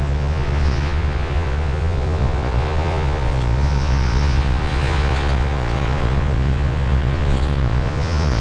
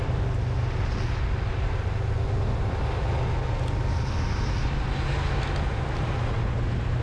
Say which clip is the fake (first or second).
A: first